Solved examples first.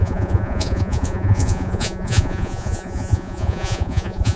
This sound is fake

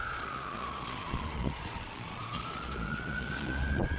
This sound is fake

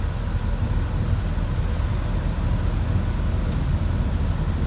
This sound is real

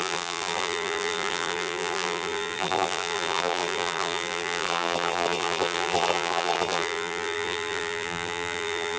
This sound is fake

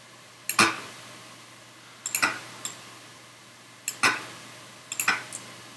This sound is real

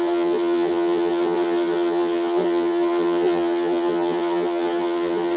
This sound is fake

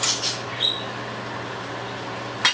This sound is real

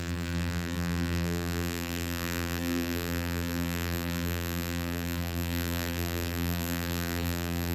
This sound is fake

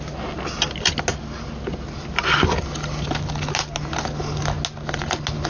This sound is real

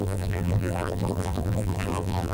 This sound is fake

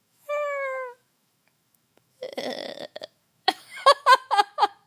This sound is fake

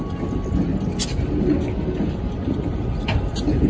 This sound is real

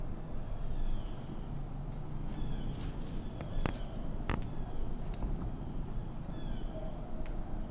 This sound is real